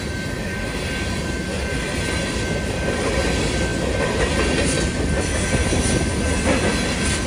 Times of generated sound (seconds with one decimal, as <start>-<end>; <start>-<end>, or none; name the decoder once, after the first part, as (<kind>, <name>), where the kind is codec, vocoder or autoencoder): 3.7-5.3 (vocoder, BigVGAN v2)